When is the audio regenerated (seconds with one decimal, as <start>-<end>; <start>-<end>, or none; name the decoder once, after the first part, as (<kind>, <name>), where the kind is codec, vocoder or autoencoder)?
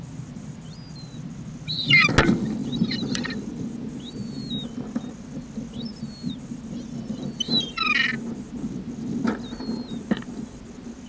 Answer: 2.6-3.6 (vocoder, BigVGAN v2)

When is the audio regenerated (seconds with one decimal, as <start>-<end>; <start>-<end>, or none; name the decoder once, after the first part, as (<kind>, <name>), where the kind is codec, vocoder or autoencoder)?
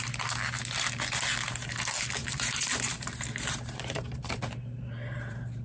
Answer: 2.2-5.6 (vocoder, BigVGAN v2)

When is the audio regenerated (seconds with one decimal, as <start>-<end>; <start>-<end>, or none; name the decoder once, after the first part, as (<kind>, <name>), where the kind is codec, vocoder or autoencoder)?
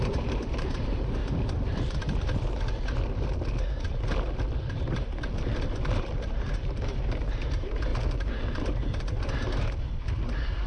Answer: 0.0-1.2 (vocoder, BigVGAN v2); 4.7-10.7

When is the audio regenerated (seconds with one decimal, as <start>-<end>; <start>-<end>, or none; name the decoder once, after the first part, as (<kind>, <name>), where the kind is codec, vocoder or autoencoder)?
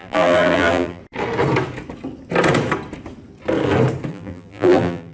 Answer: 0.0-1.0 (vocoder, BigVGAN v2); 4.1-5.1